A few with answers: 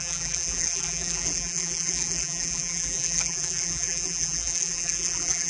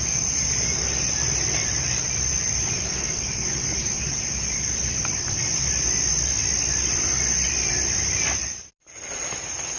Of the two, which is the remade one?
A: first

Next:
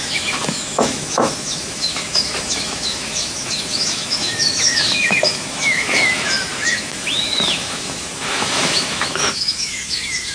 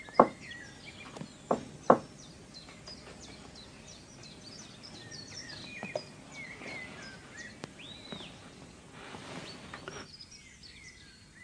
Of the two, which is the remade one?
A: first